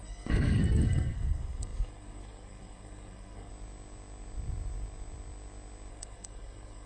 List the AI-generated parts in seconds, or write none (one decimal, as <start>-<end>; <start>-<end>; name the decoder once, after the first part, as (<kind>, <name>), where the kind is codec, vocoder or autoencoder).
0.0-3.5 (codec, SNAC); 5.9-6.9